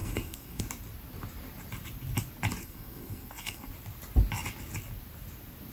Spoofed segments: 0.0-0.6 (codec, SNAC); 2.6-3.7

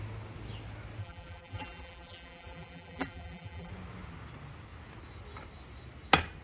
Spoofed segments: 1.0-3.7 (vocoder, BigVGAN v2)

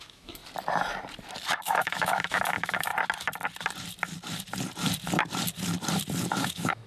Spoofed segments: 0.0-0.4 (autoencoder, DAC-VAE); 1.5-2.9; 6.3-6.9

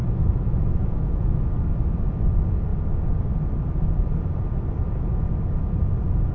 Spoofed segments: 0.0-1.4 (autoencoder, DAC-VAE)

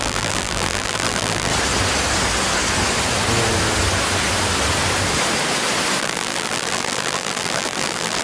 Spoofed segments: 0.0-1.5 (vocoder, BigVGAN v2); 6.0-8.2